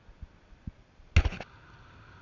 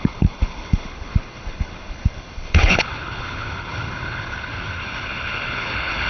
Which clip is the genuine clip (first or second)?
first